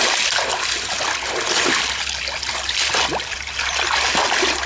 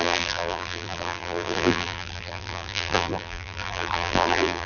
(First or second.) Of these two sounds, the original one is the first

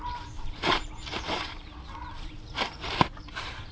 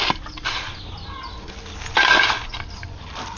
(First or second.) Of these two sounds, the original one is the second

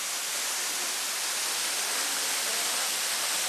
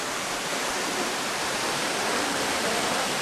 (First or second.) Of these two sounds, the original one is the first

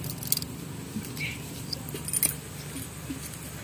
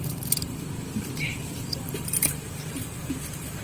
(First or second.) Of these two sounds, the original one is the first